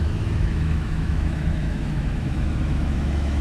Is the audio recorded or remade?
remade